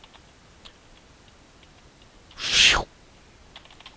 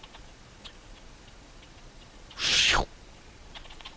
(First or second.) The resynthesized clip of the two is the second